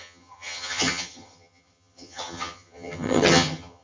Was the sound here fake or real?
fake